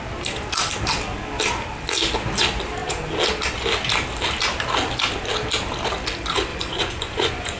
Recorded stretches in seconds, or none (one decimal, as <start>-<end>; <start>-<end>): 0.0-6.5